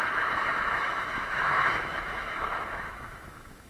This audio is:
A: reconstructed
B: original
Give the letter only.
A